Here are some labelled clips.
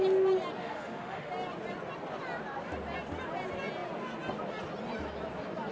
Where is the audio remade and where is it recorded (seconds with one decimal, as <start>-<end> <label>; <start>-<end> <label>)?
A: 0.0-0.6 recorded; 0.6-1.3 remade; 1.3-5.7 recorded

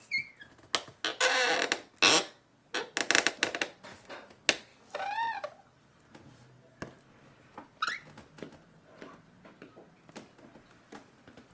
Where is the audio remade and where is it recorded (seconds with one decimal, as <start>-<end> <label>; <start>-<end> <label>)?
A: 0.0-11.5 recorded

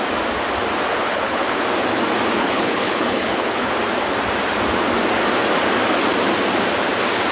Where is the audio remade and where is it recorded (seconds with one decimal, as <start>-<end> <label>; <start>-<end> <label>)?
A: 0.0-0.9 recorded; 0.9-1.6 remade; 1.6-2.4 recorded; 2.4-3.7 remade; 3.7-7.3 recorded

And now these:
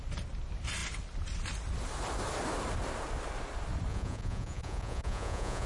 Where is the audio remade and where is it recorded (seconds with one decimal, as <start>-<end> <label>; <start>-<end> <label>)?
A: 0.0-3.9 recorded; 3.9-5.7 remade

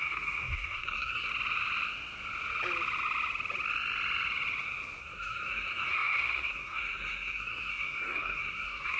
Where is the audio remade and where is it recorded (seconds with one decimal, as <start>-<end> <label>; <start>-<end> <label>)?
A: 0.0-1.3 remade; 1.3-5.0 recorded; 5.0-9.0 remade

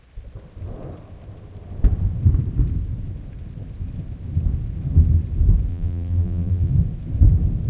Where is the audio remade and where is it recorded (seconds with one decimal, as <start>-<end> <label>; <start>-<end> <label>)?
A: 0.0-5.7 recorded; 5.7-6.7 remade; 6.7-7.7 recorded

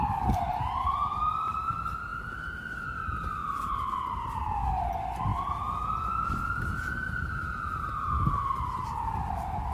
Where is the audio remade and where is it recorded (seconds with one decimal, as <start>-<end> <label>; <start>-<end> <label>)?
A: 0.0-9.7 recorded